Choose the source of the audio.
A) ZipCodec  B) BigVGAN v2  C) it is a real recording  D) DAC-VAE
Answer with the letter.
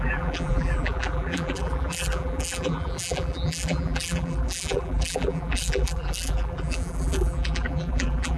B